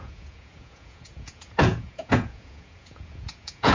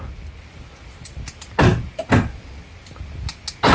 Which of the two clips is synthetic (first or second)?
first